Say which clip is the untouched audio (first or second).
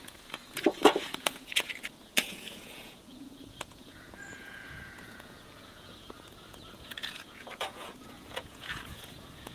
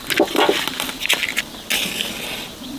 second